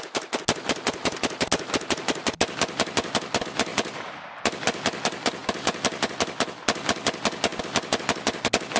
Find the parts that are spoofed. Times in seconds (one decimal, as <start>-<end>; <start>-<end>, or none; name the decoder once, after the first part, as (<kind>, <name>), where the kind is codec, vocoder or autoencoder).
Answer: 3.7-4.3 (vocoder, BigVGAN v2); 5.4-6.1